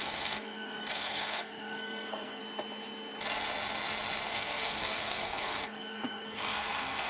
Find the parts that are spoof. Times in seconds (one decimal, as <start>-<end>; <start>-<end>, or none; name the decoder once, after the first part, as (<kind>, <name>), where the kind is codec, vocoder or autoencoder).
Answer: 0.0-2.4 (codec, SNAC); 4.3-7.1